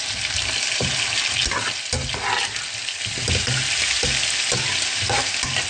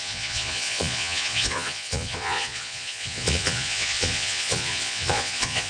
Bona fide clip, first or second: first